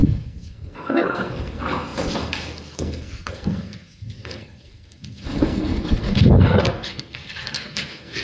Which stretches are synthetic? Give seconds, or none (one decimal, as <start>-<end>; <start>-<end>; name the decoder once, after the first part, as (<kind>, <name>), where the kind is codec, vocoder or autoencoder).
0.0-8.2 (codec, SNAC)